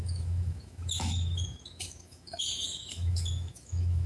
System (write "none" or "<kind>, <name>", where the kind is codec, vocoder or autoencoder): autoencoder, DAC-VAE